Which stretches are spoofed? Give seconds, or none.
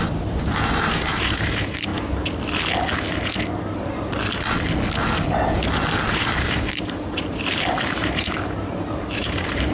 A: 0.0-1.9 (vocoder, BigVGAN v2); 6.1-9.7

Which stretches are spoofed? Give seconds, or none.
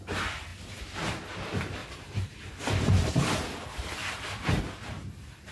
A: 1.8-3.1 (vocoder, BigVGAN v2); 4.0-4.6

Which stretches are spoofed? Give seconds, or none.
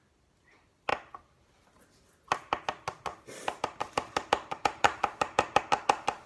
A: 3.1-5.6 (vocoder, BigVGAN v2)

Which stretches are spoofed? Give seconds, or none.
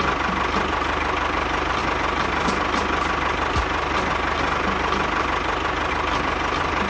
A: 0.0-1.8 (vocoder, BigVGAN v2); 5.9-6.9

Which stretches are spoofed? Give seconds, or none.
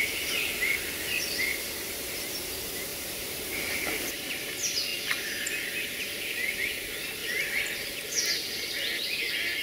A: 2.9-4.3 (vocoder, BigVGAN v2)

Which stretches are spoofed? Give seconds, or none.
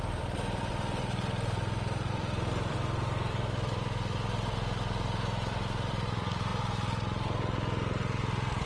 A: 0.0-0.7 (vocoder, BigVGAN v2); 2.1-6.5